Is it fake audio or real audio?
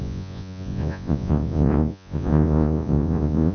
fake